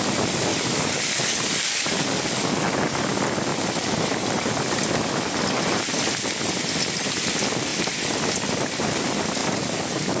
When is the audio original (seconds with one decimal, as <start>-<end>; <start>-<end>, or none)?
0.0-0.5; 3.0-9.4